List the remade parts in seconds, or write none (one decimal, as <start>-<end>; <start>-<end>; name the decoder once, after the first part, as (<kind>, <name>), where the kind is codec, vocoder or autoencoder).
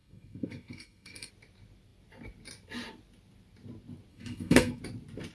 0.0-1.3 (codec, SNAC); 4.1-4.8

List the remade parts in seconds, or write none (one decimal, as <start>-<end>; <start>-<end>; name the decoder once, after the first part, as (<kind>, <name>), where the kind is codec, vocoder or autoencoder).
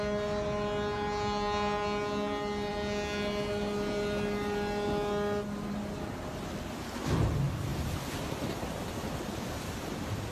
none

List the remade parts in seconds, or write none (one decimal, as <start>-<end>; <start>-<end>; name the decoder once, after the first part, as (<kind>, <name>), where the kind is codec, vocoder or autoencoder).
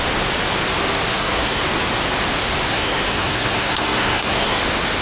1.1-1.6 (codec, SNAC); 2.7-4.6